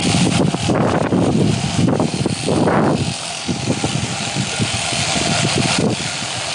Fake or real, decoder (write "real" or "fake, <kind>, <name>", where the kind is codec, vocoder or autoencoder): real